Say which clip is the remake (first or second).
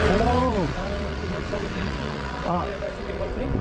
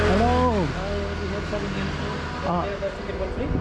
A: first